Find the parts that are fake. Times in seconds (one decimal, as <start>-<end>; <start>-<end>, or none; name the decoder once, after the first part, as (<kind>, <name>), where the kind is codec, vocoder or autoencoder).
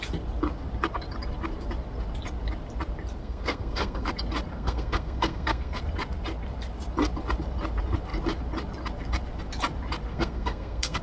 3.2-4.1 (codec, SNAC); 4.5-5.8; 10.1-11.0